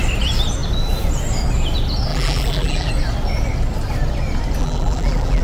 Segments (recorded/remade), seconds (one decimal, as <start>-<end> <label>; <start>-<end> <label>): 0.0-2.1 recorded; 2.1-2.9 remade; 2.9-4.6 recorded; 4.6-5.4 remade